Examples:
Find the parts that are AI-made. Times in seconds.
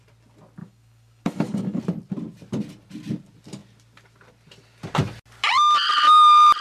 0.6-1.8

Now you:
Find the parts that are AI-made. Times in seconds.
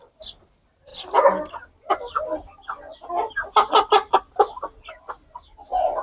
none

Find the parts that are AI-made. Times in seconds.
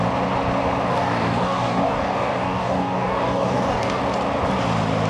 0.9-4.0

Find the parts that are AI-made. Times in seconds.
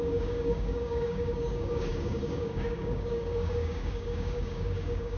0.0-5.2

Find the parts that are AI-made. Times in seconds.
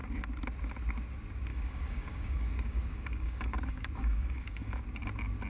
1.5-4.8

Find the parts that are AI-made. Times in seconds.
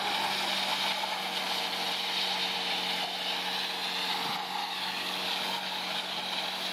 4.6-6.2